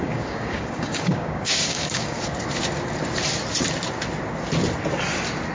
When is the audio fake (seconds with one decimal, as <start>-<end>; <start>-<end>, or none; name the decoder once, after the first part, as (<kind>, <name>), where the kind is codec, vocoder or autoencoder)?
0.0-2.2 (codec, DAC)